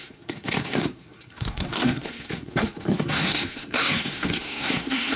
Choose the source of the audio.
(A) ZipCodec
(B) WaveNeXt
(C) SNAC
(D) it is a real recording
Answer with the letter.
C